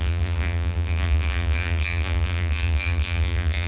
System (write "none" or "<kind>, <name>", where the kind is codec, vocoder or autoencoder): vocoder, BigVGAN v2